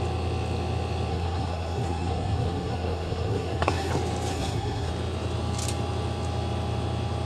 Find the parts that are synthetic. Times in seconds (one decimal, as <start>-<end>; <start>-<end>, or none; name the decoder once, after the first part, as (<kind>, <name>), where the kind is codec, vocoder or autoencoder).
1.1-3.9 (codec, SNAC); 4.3-4.9